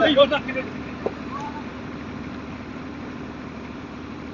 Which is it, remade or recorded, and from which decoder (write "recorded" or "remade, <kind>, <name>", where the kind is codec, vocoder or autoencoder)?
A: remade, vocoder, BigVGAN v2